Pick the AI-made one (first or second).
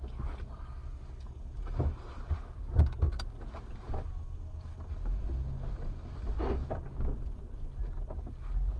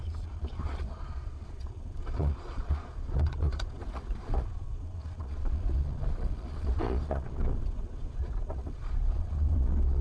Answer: second